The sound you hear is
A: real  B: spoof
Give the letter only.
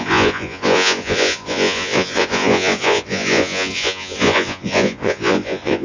B